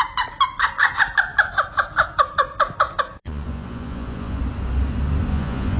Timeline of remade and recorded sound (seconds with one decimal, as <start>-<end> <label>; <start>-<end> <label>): 0.0-3.2 recorded; 3.2-4.4 remade; 4.4-5.3 recorded; 5.3-5.8 remade